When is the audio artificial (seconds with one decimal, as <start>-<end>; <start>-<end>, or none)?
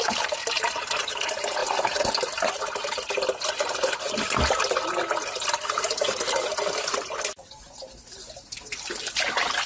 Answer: none